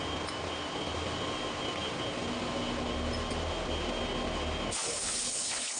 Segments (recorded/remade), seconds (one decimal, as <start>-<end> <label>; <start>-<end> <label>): 0.0-4.9 recorded; 4.9-5.8 remade